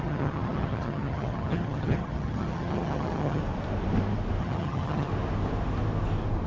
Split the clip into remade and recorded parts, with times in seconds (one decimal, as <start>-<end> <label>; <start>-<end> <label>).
0.0-3.4 remade; 3.4-4.4 recorded; 4.4-5.1 remade; 5.1-6.5 recorded